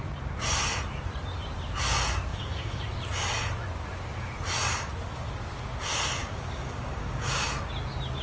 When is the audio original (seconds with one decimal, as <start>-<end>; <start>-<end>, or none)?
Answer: 0.0-2.3; 2.8-6.2; 7.5-8.2